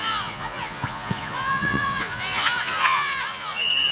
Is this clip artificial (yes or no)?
yes